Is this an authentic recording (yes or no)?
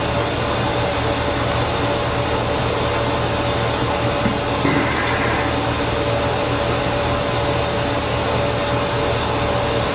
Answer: yes